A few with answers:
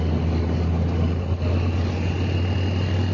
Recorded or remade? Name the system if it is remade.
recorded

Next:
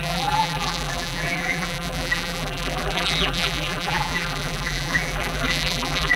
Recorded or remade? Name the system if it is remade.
remade, vocoder, BigVGAN v2